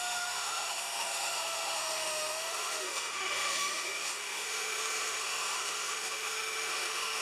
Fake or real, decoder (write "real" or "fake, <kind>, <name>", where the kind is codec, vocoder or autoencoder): fake, autoencoder, DAC-VAE